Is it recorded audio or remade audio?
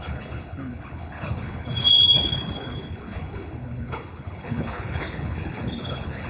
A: remade